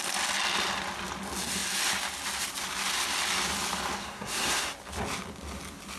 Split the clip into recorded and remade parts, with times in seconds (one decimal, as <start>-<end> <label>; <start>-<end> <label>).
0.0-4.0 recorded; 4.0-4.7 remade; 4.7-6.0 recorded